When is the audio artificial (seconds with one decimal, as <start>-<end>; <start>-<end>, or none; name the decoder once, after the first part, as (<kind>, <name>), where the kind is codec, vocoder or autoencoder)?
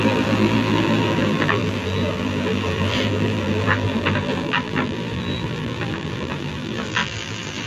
0.0-7.7 (vocoder, BigVGAN v2)